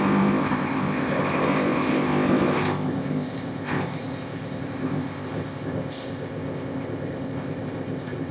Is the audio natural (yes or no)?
no